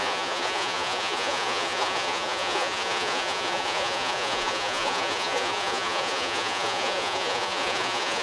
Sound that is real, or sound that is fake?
fake